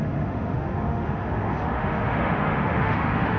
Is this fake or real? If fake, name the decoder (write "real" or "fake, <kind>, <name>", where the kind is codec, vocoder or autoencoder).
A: fake, autoencoder, DAC-VAE